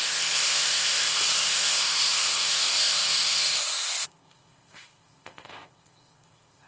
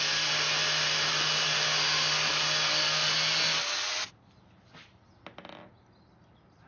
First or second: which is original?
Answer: second